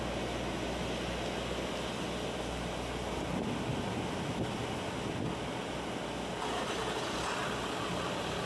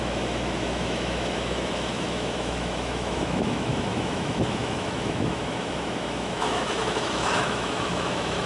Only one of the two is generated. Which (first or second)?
second